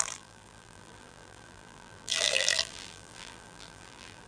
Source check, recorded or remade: remade